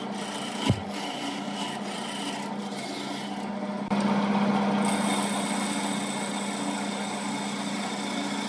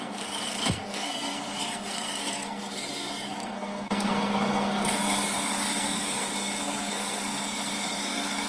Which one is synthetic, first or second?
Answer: second